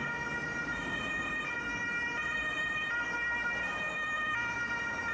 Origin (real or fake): real